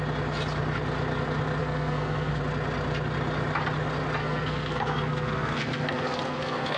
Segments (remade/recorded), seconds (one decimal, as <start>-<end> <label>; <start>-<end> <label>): 0.0-1.6 recorded; 1.6-2.4 remade; 2.4-4.2 recorded; 4.2-6.8 remade